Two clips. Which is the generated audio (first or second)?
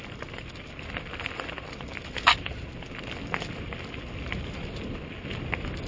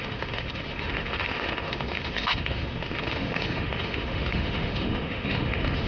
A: second